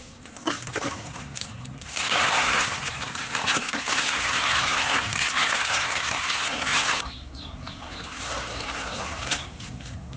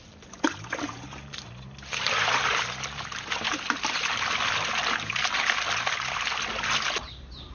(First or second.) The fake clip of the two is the first